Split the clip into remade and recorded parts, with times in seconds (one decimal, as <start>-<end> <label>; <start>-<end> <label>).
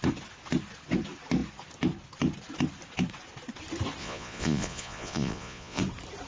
0.0-4.0 recorded; 4.0-5.8 remade; 5.8-6.3 recorded